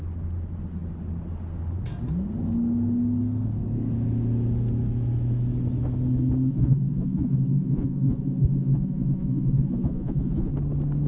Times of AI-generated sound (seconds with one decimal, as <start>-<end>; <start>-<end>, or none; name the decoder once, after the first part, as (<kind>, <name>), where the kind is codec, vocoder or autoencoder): 6.5-10.5 (vocoder, Vocos)